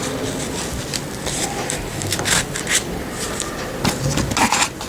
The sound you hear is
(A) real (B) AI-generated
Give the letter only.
A